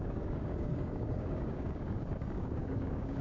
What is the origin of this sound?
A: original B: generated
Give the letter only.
B